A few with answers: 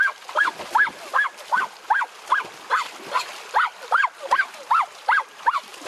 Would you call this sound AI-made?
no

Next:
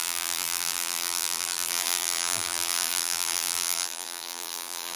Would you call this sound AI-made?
yes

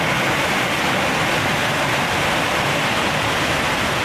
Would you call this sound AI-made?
no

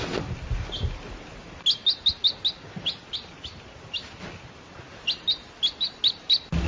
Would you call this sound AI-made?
no